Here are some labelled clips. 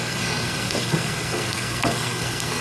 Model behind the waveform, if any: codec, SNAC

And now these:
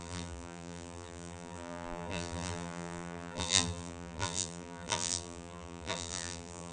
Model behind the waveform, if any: vocoder, BigVGAN v2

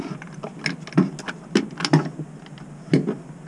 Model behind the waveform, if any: none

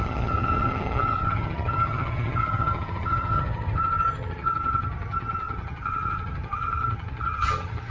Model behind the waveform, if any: vocoder, HiFi-GAN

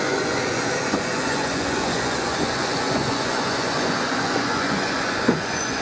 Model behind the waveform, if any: vocoder, Vocos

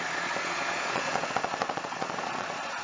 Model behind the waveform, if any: vocoder, Vocos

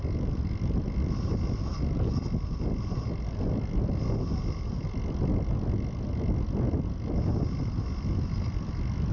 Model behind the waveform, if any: none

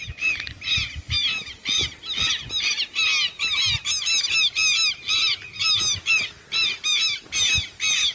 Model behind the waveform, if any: none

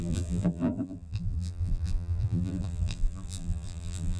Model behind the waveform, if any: vocoder, BigVGAN v2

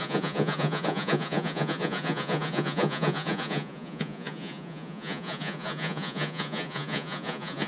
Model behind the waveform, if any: vocoder, Vocos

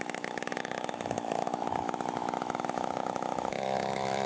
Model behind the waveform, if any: autoencoder, DAC-VAE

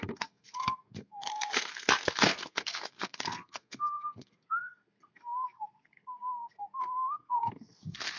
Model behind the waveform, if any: codec, SNAC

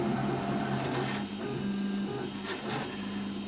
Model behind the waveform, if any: none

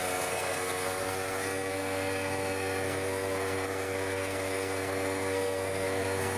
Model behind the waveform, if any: codec, SNAC